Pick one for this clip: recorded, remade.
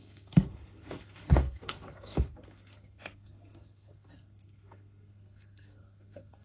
remade